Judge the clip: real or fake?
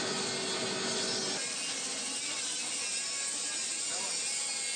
real